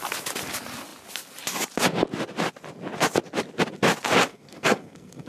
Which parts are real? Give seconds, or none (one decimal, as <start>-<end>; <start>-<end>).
0.0-4.3